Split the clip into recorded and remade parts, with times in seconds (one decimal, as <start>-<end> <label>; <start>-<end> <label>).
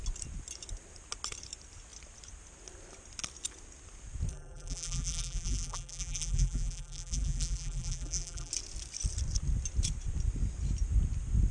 0.0-4.3 recorded; 4.3-8.5 remade; 8.5-11.5 recorded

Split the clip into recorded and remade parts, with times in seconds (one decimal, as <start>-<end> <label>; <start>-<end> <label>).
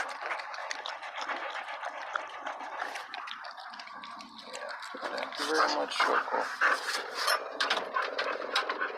0.0-0.6 recorded; 0.6-3.7 remade; 3.7-7.4 recorded; 7.4-7.9 remade; 7.9-9.0 recorded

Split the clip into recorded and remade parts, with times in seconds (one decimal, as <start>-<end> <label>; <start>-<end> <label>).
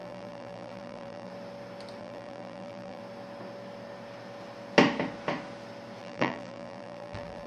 0.0-1.3 remade; 1.3-2.0 recorded; 2.0-3.0 remade; 3.0-6.0 recorded; 6.0-7.5 remade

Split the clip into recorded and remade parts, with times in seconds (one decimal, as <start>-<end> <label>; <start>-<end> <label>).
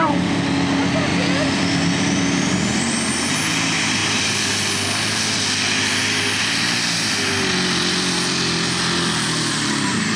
0.0-1.1 recorded; 1.1-1.6 remade; 1.6-4.0 recorded; 4.0-4.5 remade; 4.5-10.2 recorded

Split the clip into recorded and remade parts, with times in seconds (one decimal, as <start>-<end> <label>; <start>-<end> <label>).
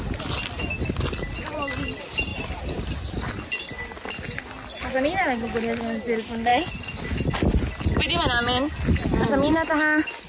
0.0-2.3 recorded; 2.3-3.6 remade; 3.6-10.3 recorded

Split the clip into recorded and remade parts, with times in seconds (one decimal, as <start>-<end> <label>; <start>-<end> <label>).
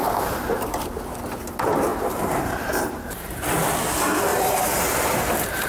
0.0-0.9 remade; 0.9-1.9 recorded; 1.9-3.4 remade; 3.4-4.3 recorded; 4.3-5.7 remade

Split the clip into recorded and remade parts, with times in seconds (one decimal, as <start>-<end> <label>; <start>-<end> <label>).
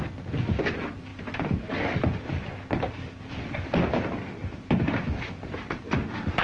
0.0-4.4 recorded; 4.4-5.0 remade; 5.0-6.4 recorded